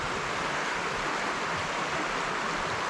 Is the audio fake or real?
real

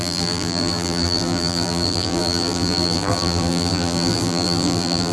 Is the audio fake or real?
fake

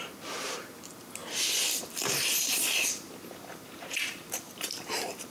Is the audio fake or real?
fake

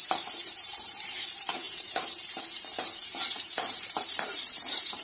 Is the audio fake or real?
fake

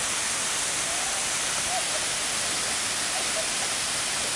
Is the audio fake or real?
real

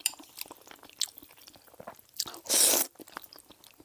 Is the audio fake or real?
fake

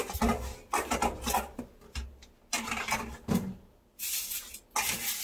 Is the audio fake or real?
real